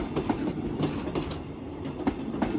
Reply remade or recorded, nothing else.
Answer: recorded